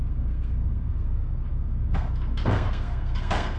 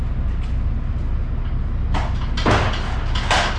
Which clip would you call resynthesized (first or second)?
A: first